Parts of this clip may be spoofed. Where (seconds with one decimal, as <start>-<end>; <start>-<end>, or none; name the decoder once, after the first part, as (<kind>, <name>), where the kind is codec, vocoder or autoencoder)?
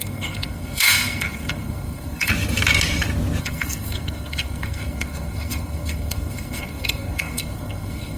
0.0-2.3 (codec, SNAC); 3.4-8.2